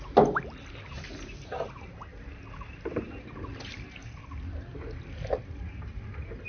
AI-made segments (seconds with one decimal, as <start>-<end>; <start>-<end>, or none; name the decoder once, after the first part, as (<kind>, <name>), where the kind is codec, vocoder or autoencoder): none